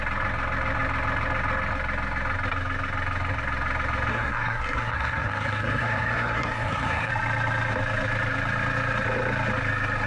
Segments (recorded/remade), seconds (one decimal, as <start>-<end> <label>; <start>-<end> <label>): 0.0-4.1 recorded; 4.1-7.1 remade; 7.1-10.1 recorded